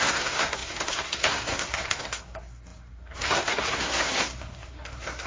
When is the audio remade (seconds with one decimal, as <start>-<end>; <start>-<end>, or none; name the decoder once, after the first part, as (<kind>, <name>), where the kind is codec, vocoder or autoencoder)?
0.0-5.3 (codec, SNAC)